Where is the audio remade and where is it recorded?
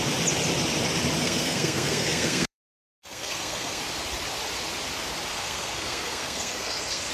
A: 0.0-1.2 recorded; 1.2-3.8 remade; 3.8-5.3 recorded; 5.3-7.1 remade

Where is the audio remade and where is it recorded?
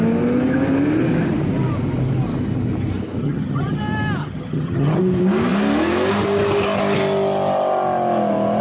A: 0.0-3.2 recorded; 3.2-3.8 remade; 3.8-4.2 recorded; 4.2-5.0 remade; 5.0-8.6 recorded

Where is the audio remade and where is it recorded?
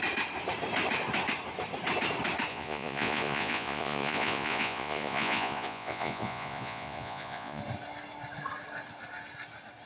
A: 0.0-2.5 recorded; 2.5-7.6 remade; 7.6-9.9 recorded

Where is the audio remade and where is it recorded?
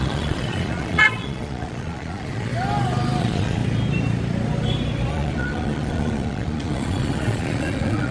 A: 0.0-2.5 remade; 2.5-3.2 recorded; 3.2-3.6 remade; 3.6-5.1 recorded; 5.1-8.1 remade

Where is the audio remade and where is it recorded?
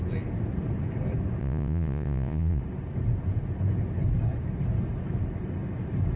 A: 0.0-1.4 recorded; 1.4-2.6 remade; 2.6-6.2 recorded